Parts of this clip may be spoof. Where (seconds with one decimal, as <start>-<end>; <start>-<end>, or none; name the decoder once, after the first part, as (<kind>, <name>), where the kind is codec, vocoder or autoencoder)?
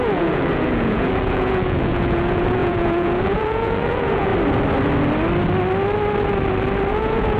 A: 0.0-4.3 (vocoder, Vocos); 6.9-7.4